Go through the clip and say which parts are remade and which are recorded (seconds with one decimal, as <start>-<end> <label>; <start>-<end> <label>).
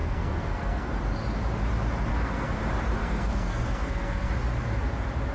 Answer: 0.0-0.9 remade; 0.9-2.1 recorded; 2.1-2.6 remade; 2.6-3.0 recorded; 3.0-4.3 remade; 4.3-5.3 recorded